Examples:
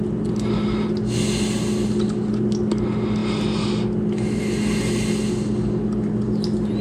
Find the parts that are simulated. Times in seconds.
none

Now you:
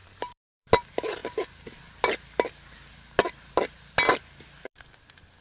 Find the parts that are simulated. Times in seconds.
0.0-0.7 (vocoder, BigVGAN v2)

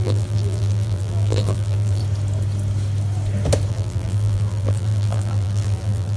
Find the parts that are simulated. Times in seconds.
0.0-2.0 (vocoder, BigVGAN v2); 3.7-6.2

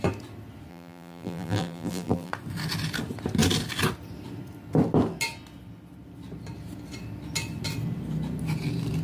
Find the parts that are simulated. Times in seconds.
0.7-2.3 (vocoder, BigVGAN v2)

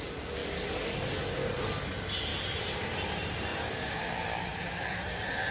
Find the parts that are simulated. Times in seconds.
2.3-2.9 (vocoder, BigVGAN v2); 3.5-4.1; 4.5-5.5